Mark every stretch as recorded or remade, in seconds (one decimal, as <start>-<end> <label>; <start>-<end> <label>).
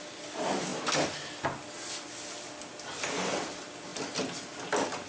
0.0-5.1 recorded